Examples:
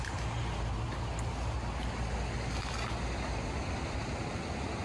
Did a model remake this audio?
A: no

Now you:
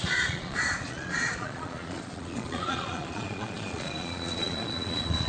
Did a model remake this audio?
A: yes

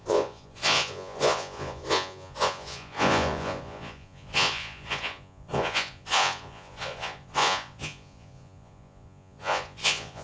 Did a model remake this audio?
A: yes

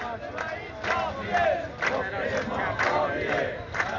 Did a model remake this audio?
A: no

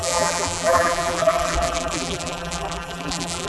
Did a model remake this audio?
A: yes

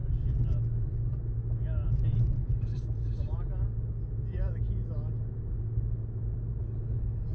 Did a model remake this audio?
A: no